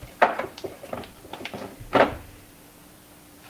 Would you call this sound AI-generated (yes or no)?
yes